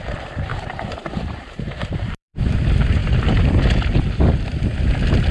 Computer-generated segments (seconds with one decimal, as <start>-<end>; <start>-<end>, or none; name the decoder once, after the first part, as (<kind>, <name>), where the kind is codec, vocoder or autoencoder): 0.5-2.4 (vocoder, BigVGAN v2)